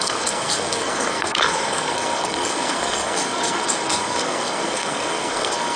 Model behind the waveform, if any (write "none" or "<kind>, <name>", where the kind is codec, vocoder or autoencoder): codec, SNAC